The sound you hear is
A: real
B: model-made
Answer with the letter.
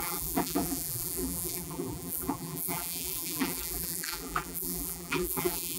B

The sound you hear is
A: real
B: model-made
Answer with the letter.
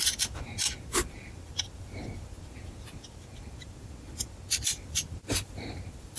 B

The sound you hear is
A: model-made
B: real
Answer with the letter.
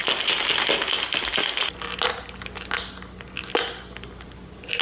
B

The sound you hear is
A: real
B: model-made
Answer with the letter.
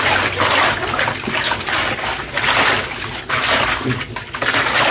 A